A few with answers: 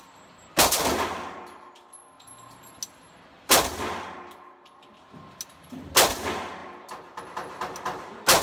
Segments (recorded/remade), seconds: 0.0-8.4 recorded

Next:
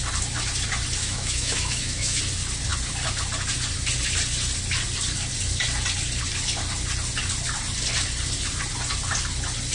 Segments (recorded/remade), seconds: 0.0-1.0 recorded; 1.0-2.2 remade; 2.2-9.7 recorded